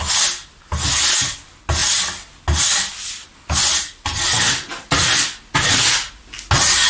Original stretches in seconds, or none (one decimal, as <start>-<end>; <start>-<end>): 0.0-6.9